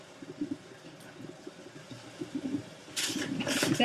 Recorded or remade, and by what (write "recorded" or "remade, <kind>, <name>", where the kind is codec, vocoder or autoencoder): recorded